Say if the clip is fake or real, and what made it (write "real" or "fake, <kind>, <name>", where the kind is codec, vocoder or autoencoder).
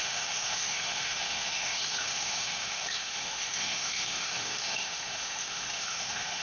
fake, autoencoder, DAC-VAE